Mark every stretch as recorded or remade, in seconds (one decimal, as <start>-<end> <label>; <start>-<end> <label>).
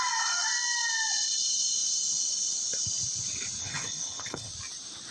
0.0-3.6 recorded; 3.6-4.5 remade; 4.5-5.1 recorded